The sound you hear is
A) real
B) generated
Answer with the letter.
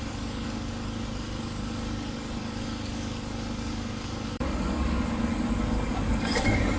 B